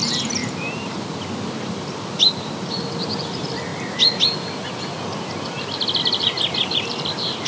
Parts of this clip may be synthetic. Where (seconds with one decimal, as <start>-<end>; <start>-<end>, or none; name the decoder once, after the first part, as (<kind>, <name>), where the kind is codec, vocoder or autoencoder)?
0.0-0.4 (vocoder, BigVGAN v2); 3.2-3.7; 6.0-7.5